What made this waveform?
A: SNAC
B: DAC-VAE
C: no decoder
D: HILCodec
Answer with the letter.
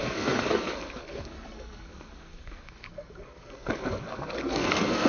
A